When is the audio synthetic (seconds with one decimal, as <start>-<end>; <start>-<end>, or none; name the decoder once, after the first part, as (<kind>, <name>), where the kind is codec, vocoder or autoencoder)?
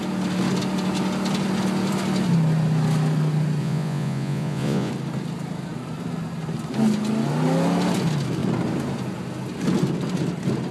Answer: 3.6-4.9 (vocoder, Vocos)